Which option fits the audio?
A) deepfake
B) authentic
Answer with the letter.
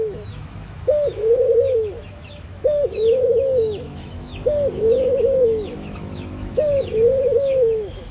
A